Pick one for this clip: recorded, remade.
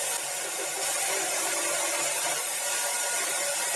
recorded